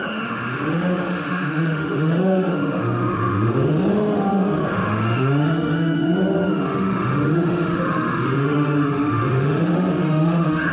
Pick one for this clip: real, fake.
fake